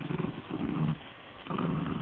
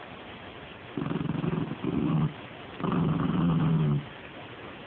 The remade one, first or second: first